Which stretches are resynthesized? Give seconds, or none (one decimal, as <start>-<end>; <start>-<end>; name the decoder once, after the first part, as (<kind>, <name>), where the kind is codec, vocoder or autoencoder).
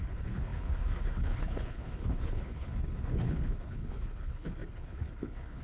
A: 0.0-5.6 (codec, HILCodec)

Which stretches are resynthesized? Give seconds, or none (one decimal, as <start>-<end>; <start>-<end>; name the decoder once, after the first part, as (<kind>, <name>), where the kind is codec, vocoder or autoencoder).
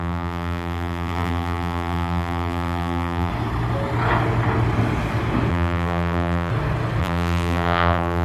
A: 0.0-3.3 (vocoder, BigVGAN v2); 5.5-6.5; 7.0-8.2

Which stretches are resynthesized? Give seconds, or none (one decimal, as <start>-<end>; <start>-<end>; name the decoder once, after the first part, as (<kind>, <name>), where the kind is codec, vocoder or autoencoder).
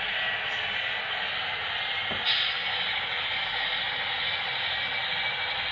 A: none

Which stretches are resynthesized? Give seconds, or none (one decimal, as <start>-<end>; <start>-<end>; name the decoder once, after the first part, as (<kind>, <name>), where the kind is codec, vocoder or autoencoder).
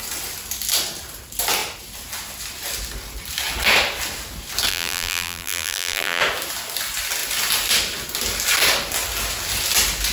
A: 4.7-6.2 (vocoder, BigVGAN v2)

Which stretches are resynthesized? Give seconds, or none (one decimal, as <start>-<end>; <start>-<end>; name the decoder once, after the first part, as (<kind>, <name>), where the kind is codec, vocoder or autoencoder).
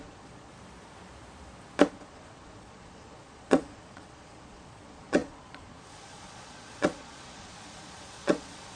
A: 0.0-0.5 (vocoder, Vocos); 1.9-8.8